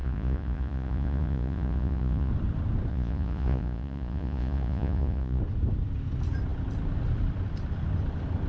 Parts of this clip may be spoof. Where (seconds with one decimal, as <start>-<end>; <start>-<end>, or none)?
0.0-2.3; 2.9-5.4